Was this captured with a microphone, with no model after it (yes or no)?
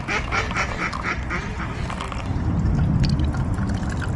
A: yes